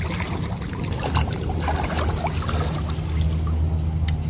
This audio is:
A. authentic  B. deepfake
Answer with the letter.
A